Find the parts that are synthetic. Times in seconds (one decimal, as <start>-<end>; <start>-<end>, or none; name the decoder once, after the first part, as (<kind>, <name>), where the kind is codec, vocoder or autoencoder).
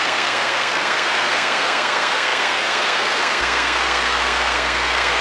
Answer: 0.0-5.2 (codec, SNAC)